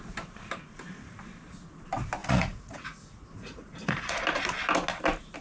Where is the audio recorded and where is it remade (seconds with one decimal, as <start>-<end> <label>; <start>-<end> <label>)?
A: 0.0-2.2 recorded; 2.2-4.2 remade; 4.2-5.4 recorded